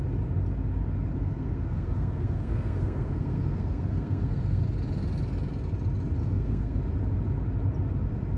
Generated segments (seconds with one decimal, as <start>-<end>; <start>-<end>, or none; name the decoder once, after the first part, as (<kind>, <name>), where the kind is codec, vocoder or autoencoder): 1.1-4.6 (codec, SNAC); 6.2-6.8

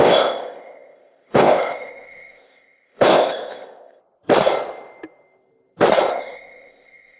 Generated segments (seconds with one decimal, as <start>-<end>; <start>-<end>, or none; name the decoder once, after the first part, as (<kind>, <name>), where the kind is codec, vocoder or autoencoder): 0.0-4.0 (codec, ZipCodec); 6.1-7.2

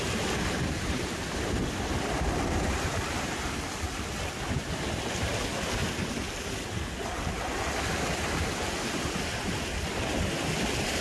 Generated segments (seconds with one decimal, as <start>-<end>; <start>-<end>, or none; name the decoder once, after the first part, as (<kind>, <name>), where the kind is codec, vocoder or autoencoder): none

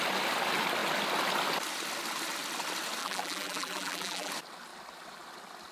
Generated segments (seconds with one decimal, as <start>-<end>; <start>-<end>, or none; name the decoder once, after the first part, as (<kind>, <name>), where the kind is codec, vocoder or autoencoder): 3.0-4.3 (vocoder, BigVGAN v2)

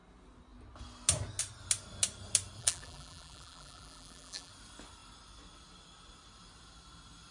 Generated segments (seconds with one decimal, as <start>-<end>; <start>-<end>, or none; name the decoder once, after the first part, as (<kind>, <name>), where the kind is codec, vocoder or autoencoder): 2.6-4.5 (vocoder, BigVGAN v2)

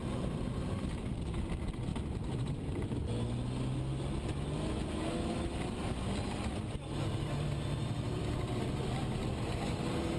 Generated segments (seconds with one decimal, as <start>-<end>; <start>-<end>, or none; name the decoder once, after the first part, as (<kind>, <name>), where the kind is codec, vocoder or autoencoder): 0.0-1.9 (vocoder, BigVGAN v2); 7.0-10.2

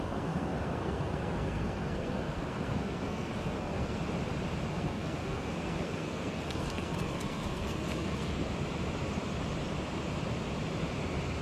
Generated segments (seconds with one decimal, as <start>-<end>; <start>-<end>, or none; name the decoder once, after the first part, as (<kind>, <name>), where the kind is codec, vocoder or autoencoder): 0.0-4.0 (codec, SNAC); 4.7-8.4